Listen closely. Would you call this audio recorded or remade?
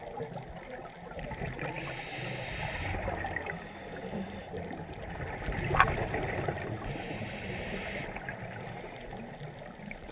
recorded